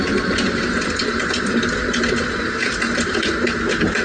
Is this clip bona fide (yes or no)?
yes